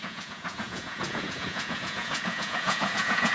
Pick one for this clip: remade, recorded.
remade